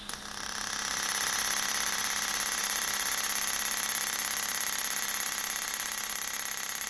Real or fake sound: real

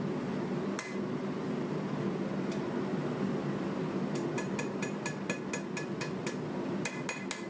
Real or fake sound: real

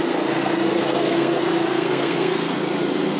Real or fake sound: fake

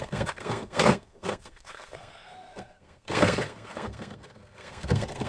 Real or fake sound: fake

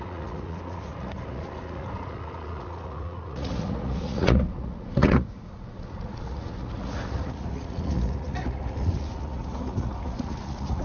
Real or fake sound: fake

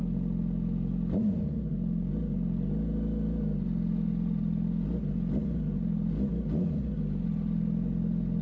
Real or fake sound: real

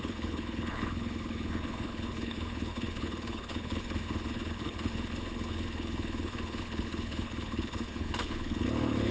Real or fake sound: fake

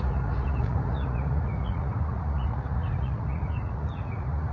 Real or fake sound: fake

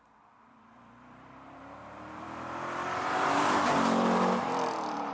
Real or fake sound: fake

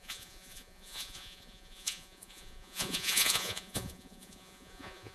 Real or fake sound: fake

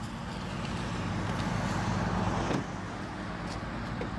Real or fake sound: real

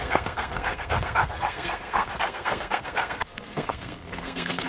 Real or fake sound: fake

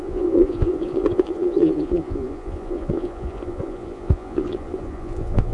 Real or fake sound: fake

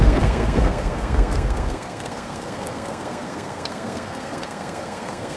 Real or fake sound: fake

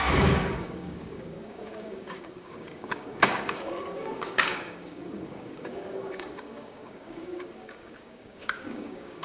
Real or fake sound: fake